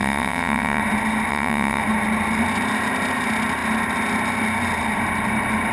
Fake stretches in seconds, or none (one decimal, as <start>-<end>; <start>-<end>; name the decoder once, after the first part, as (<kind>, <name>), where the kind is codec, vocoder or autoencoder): 0.0-0.8 (vocoder, WaveNeXt); 1.3-1.8